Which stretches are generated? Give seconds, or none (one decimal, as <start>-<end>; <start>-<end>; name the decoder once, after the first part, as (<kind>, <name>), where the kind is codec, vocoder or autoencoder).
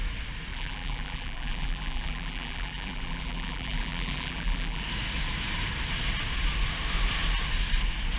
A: 0.5-4.8 (vocoder, BigVGAN v2)